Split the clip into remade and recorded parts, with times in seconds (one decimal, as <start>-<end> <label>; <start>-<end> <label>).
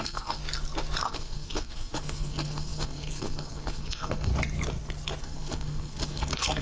0.0-0.4 remade; 0.4-1.0 recorded; 1.0-4.3 remade; 4.3-5.2 recorded; 5.2-6.6 remade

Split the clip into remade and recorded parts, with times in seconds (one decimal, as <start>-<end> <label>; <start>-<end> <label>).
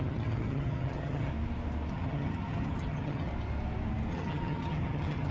0.0-1.3 remade; 1.3-1.9 recorded; 1.9-3.3 remade; 3.3-4.1 recorded; 4.1-5.3 remade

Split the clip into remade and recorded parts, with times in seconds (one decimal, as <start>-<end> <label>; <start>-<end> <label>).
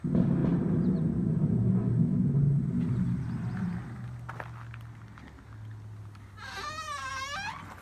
0.0-7.8 recorded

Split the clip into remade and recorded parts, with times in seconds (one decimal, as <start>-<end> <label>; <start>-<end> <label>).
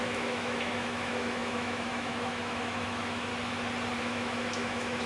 0.0-3.3 remade; 3.3-4.0 recorded; 4.0-5.1 remade